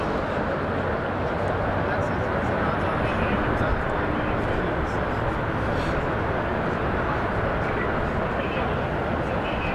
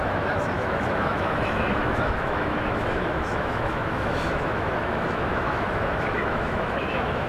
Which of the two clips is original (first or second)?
first